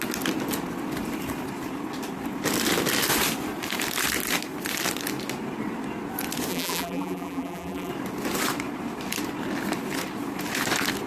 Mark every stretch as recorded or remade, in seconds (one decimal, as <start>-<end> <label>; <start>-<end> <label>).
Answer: 0.0-6.5 recorded; 6.5-7.9 remade; 7.9-11.1 recorded